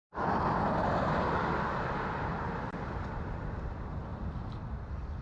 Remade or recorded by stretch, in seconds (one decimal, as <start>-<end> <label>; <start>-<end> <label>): 0.0-5.2 recorded